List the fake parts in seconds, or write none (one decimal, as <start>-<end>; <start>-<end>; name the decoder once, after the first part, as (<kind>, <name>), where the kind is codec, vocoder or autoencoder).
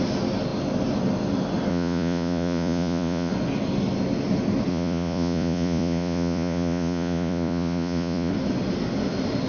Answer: 1.7-3.3 (vocoder, Vocos); 4.7-8.3